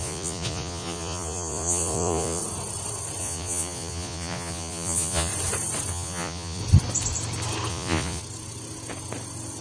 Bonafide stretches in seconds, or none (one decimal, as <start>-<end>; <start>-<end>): 2.4-3.2; 5.3-5.9; 6.6-7.7; 8.2-9.6